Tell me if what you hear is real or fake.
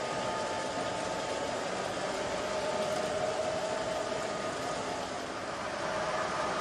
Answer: real